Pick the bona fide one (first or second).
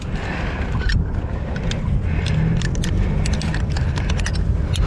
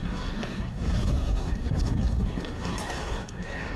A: first